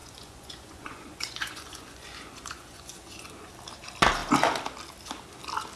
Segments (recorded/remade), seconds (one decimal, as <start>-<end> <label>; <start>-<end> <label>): 0.0-3.5 remade; 3.5-5.8 recorded